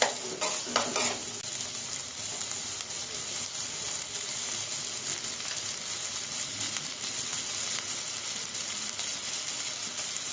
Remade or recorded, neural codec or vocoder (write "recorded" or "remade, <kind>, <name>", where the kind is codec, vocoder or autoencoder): recorded